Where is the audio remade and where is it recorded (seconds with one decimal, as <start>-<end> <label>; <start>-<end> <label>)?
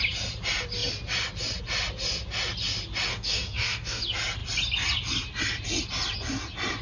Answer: 0.0-3.1 recorded; 3.1-4.0 remade; 4.0-6.8 recorded